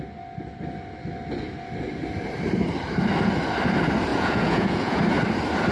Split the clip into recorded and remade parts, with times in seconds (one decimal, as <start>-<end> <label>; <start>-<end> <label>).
0.0-4.1 recorded; 4.1-5.0 remade; 5.0-5.7 recorded